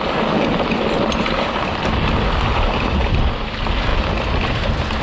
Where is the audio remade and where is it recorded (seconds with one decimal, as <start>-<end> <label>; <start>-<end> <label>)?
0.0-5.0 recorded